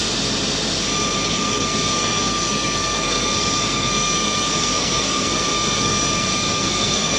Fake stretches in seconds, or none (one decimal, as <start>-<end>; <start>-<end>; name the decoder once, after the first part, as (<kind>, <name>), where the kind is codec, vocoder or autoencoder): 1.3-7.2 (codec, SNAC)